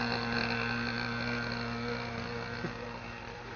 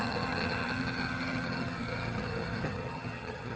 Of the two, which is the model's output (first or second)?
second